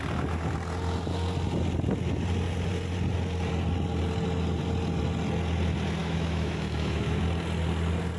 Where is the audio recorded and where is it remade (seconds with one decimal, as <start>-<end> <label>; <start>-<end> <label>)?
0.0-6.0 recorded; 6.0-7.2 remade; 7.2-8.2 recorded